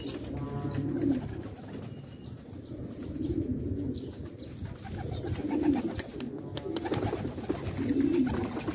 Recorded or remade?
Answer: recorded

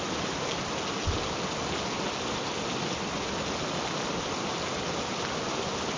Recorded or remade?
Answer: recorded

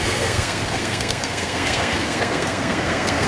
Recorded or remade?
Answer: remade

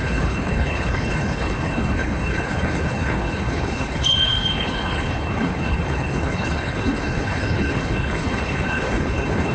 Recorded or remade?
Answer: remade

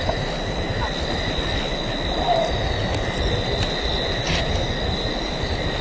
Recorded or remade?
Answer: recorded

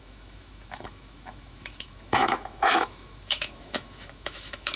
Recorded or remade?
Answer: remade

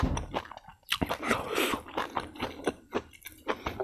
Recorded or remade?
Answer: recorded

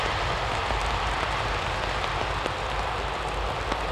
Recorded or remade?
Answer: recorded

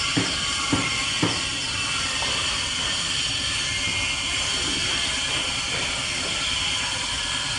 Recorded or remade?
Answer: recorded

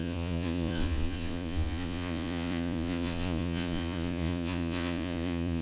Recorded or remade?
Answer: remade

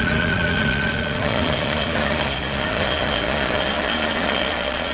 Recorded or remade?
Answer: remade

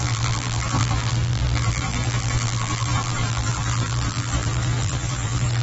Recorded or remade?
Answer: remade